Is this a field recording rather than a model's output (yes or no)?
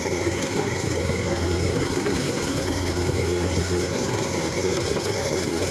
no